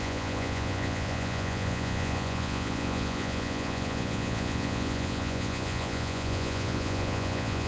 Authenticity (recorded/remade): remade